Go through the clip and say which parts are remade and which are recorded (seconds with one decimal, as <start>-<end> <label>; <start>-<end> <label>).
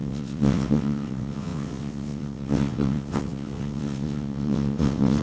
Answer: 0.0-5.2 remade